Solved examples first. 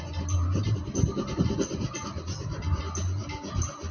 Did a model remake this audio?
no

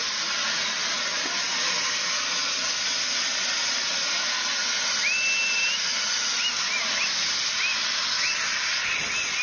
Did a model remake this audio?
no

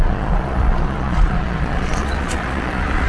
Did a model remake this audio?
yes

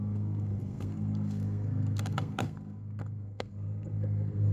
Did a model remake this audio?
yes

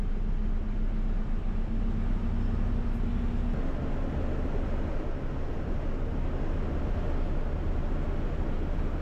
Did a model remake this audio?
no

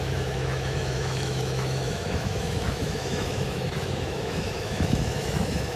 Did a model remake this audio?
yes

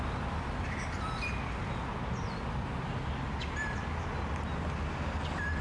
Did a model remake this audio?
no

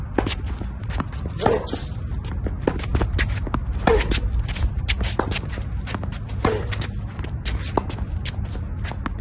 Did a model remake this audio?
no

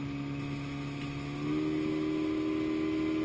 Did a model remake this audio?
no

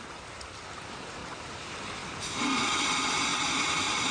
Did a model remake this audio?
no